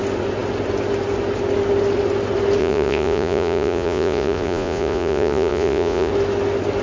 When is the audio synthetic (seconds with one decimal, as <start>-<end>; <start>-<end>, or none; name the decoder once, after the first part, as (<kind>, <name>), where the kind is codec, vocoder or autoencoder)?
2.6-6.1 (vocoder, Vocos)